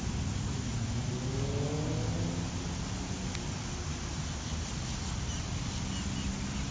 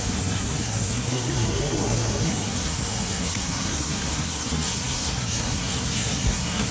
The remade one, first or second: second